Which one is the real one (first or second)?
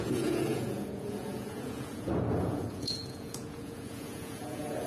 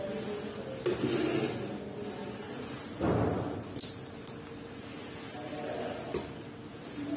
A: second